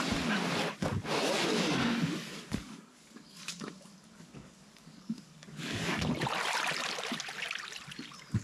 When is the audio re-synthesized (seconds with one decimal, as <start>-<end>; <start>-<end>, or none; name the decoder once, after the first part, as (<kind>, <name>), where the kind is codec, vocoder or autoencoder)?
1.5-6.1 (codec, DAC)